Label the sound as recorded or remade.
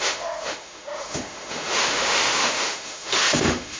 remade